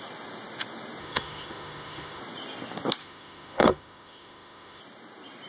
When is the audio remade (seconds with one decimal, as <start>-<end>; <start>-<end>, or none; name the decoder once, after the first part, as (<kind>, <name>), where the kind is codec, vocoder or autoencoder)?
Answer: 1.0-2.2 (autoencoder, DAC-VAE); 3.0-4.8